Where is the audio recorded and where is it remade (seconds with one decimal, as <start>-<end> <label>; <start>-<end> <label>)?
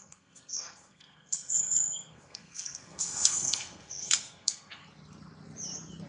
0.0-4.8 remade; 4.8-6.1 recorded